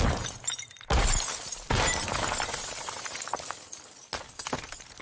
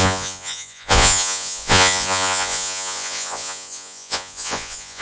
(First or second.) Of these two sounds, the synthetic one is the second